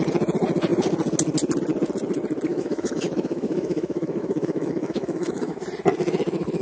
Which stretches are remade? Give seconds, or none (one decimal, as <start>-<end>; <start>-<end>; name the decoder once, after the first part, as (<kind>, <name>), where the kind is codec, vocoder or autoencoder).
2.5-5.6 (autoencoder, DAC-VAE)